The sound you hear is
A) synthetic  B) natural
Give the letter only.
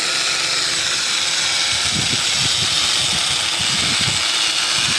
B